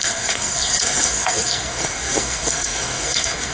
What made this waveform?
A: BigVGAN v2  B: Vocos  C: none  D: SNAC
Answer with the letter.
D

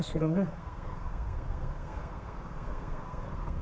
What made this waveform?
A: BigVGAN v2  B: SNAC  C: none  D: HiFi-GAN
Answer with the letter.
B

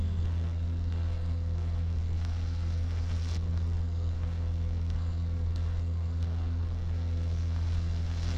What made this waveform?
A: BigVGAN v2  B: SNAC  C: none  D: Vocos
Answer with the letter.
B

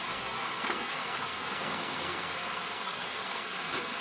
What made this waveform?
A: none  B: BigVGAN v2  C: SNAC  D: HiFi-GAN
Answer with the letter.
C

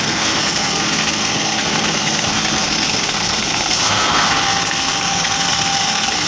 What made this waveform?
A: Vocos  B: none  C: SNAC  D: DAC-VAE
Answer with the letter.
C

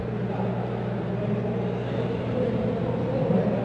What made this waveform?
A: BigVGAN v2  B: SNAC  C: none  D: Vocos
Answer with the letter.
C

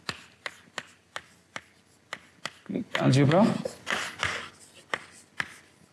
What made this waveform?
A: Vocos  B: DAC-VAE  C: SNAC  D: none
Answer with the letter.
D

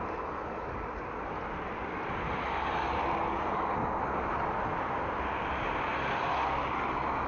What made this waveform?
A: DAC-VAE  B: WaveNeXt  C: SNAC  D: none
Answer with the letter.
D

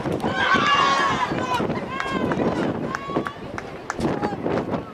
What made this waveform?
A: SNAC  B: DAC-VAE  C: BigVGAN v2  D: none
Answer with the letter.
D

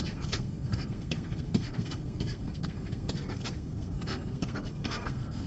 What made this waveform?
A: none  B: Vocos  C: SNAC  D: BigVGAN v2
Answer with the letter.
C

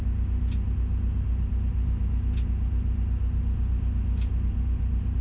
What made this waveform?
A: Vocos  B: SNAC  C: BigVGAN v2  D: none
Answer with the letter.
D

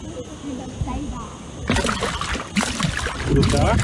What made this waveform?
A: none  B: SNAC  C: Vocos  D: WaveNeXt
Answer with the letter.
A